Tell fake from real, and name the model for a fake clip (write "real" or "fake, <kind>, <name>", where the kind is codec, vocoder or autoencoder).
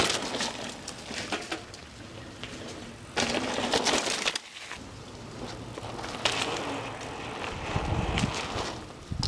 real